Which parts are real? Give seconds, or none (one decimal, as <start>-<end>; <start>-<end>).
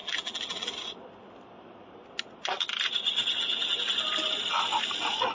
0.7-5.3